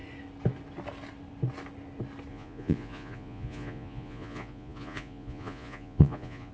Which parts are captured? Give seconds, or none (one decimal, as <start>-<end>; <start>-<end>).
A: 0.0-2.3